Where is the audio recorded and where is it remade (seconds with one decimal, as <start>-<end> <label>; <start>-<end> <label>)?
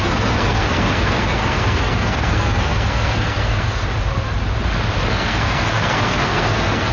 0.0-3.8 remade; 3.8-5.1 recorded; 5.1-6.9 remade